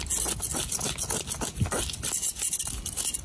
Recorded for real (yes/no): yes